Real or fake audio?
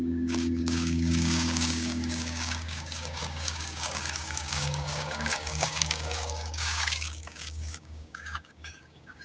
fake